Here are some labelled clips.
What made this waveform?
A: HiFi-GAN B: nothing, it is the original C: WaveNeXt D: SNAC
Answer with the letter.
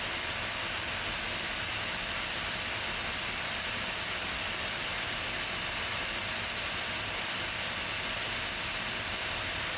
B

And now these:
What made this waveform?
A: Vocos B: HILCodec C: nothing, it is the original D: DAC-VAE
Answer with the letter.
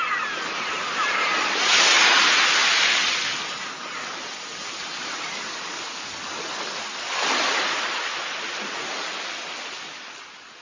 C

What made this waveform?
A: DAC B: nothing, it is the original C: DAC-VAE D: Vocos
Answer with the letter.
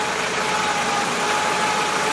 B